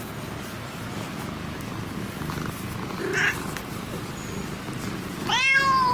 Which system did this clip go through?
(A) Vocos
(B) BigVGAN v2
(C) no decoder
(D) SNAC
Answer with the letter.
C